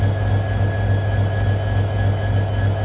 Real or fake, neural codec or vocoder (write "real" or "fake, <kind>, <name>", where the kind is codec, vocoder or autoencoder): real